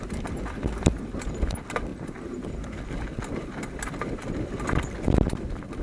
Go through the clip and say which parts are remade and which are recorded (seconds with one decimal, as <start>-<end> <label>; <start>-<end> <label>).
0.0-5.8 recorded